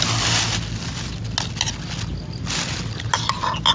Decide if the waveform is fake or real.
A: real